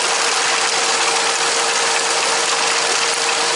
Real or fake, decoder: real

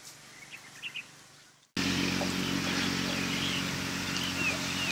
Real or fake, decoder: real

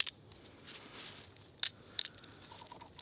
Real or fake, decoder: real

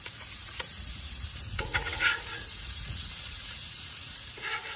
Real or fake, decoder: fake, vocoder, Vocos